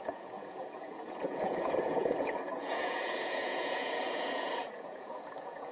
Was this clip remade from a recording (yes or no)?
yes